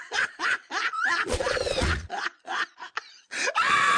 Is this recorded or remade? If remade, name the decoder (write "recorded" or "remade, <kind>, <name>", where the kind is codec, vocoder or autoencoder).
remade, vocoder, Vocos